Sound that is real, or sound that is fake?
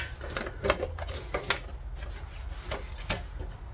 real